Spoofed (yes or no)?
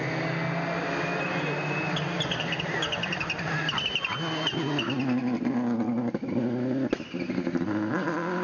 no